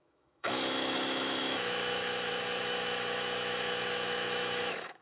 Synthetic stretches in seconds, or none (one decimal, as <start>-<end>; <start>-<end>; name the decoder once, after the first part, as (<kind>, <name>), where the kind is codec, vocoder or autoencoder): 0.0-5.0 (autoencoder, DAC-VAE)